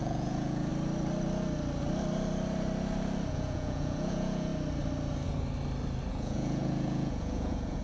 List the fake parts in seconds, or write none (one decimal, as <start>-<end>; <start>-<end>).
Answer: 0.0-0.7; 3.3-4.5; 6.1-7.8

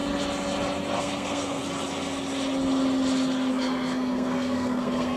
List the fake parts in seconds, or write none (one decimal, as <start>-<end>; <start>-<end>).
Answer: 1.0-1.6; 3.5-5.2

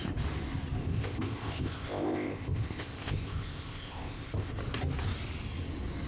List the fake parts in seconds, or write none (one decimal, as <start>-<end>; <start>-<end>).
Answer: 0.8-4.5

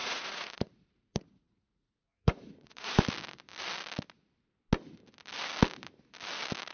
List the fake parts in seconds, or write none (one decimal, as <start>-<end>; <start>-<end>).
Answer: 0.0-2.9

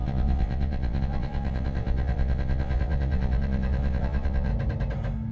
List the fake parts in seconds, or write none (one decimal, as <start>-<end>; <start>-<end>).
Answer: 0.0-4.5

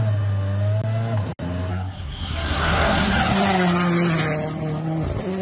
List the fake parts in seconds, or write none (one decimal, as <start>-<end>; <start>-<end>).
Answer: 1.7-3.1

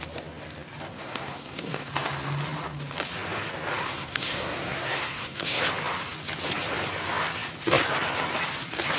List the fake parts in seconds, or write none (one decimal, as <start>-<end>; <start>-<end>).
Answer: 0.9-1.9; 3.8-5.6

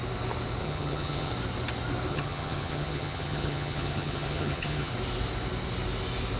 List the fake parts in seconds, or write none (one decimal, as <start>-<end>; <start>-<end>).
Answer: 0.6-1.3; 2.1-4.9